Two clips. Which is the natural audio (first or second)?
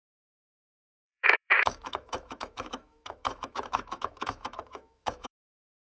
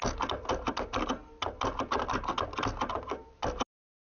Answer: second